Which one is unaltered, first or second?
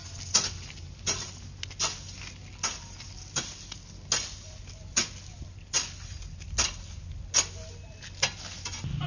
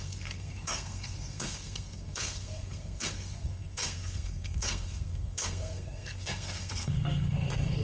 first